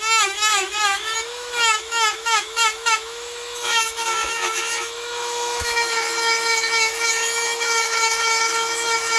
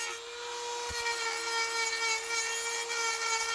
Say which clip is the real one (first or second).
second